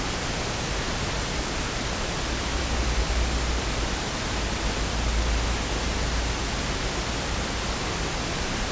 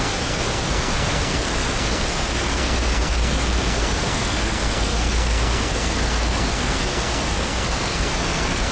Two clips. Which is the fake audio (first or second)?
second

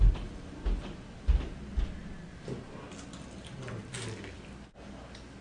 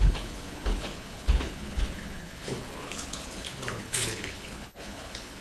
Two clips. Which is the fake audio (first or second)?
second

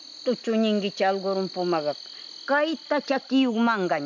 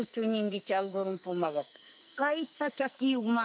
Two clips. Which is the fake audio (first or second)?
second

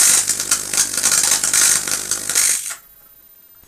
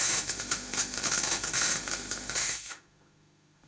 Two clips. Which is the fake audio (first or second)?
second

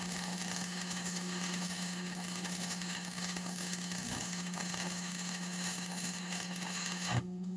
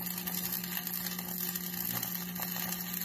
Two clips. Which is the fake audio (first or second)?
first